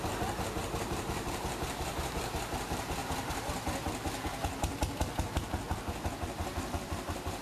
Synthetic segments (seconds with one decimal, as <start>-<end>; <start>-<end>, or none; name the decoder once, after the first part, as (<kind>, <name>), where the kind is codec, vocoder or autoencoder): 0.0-3.0 (vocoder, BigVGAN v2)